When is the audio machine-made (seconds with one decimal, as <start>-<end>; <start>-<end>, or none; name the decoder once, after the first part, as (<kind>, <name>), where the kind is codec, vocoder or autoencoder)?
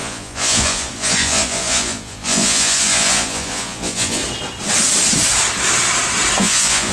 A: 0.0-4.2 (vocoder, Vocos); 6.4-6.9